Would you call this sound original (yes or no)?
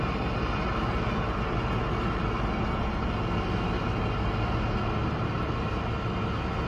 yes